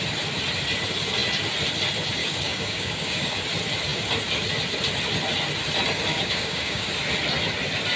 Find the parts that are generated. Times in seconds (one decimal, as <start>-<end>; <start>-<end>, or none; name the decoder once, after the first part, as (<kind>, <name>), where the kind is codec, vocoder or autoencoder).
2.2-3.4 (codec, DAC); 6.1-6.9